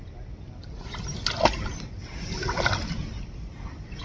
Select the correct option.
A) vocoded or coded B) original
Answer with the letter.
B